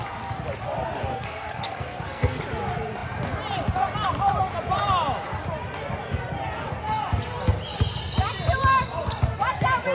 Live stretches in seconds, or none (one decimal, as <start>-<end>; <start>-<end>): 0.0-1.1; 2.4-9.9